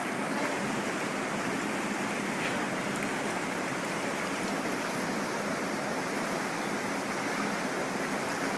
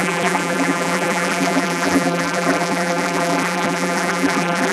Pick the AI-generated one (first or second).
second